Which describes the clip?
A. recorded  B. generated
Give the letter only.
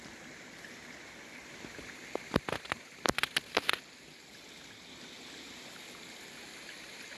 A